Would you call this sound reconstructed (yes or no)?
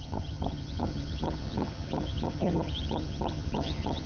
yes